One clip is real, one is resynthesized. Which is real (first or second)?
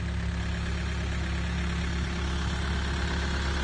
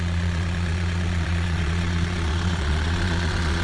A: first